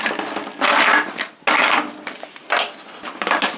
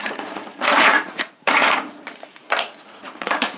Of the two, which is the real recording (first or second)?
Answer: first